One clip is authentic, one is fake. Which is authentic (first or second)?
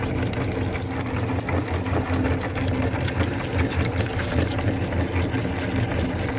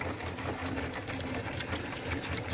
first